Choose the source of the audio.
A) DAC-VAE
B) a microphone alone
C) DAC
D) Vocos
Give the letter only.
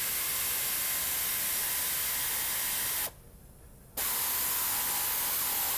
B